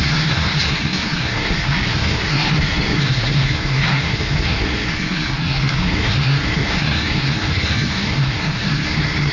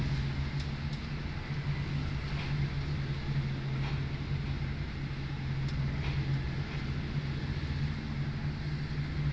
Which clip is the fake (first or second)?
first